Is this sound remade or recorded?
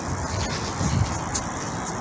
recorded